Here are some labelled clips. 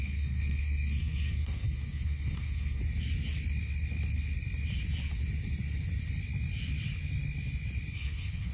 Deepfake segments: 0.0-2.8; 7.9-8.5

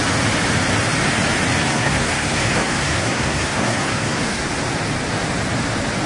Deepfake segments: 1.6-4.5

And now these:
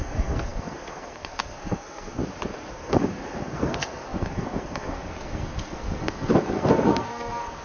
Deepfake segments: 0.0-2.2; 2.7-7.6

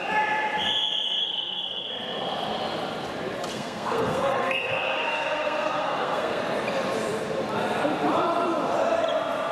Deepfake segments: 1.2-1.9; 3.5-6.4